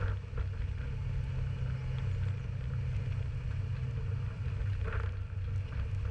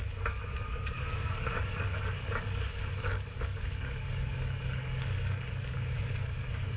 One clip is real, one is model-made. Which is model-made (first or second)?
second